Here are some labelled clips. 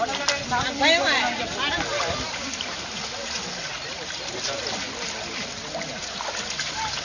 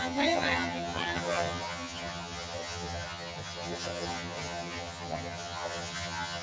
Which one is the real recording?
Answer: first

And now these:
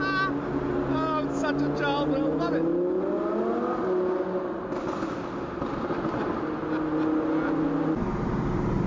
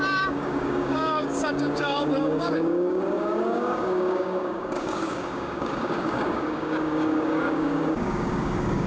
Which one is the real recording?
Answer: first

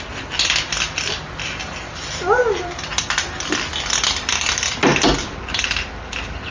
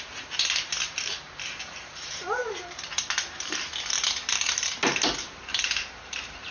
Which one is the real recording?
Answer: first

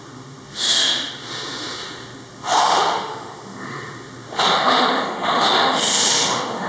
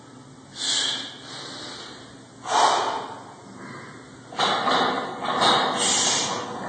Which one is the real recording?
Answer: second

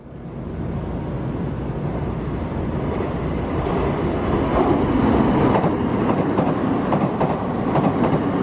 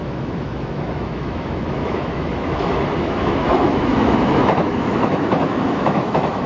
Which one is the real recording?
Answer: first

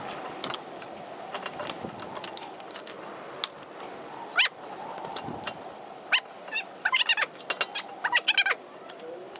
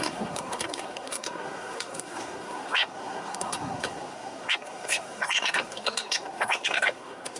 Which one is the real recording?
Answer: first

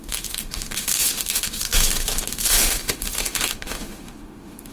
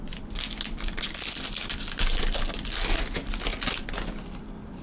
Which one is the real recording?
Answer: second